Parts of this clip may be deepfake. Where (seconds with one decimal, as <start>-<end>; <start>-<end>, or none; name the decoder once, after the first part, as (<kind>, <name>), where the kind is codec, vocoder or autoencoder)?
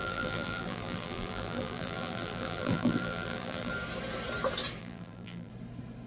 0.0-3.7 (vocoder, BigVGAN v2); 4.8-5.5